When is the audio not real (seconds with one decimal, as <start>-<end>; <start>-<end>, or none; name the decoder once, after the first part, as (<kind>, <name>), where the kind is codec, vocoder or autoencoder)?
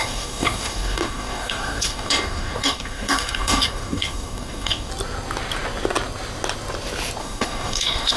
0.0-4.9 (codec, DAC); 7.2-8.2